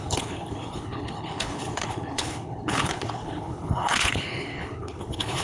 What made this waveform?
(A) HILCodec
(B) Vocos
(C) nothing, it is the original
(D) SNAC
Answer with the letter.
A